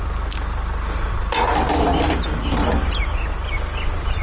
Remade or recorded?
recorded